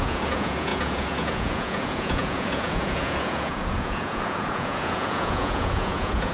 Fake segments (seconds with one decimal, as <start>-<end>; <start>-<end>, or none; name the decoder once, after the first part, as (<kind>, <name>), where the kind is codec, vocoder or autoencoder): 0.0-6.3 (vocoder, Vocos)